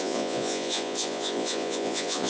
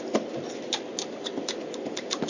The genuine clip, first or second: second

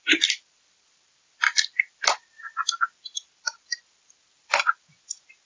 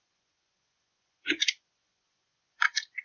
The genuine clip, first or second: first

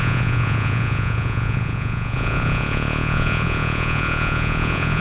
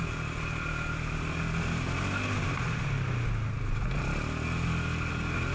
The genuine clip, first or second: second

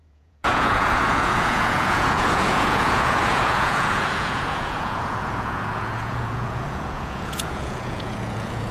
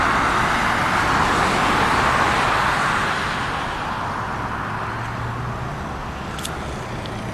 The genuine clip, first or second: second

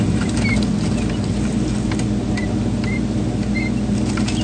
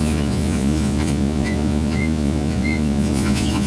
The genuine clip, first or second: first